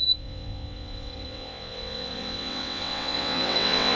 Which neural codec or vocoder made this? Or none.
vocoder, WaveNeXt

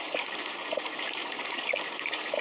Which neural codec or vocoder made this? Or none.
codec, DAC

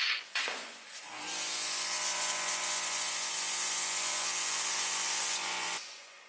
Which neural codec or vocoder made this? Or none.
vocoder, Vocos